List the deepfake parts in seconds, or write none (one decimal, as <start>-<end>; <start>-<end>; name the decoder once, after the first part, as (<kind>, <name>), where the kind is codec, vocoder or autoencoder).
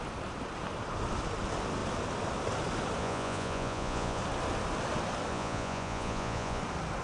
3.0-4.2 (vocoder, Vocos); 5.3-6.6